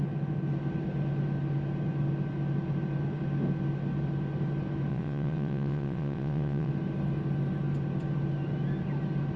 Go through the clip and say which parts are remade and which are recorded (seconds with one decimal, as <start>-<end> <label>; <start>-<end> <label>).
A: 0.0-4.9 recorded; 4.9-6.7 remade; 6.7-9.4 recorded